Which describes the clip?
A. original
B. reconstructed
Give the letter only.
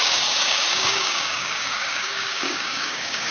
B